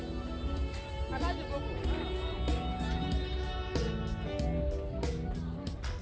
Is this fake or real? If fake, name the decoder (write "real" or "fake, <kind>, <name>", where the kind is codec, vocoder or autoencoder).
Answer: real